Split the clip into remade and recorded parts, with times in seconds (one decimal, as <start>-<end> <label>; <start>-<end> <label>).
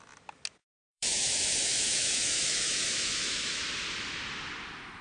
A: 0.0-0.6 recorded; 0.6-3.6 remade; 3.6-5.0 recorded